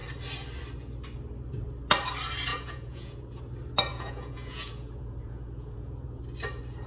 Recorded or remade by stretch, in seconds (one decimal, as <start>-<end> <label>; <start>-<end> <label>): 0.0-2.5 recorded; 2.5-3.4 remade; 3.4-3.9 recorded; 3.9-6.2 remade; 6.2-6.9 recorded